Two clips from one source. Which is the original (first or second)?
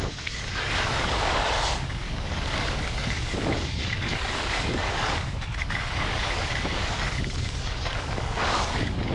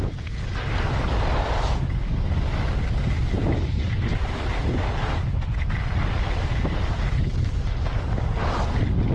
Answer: second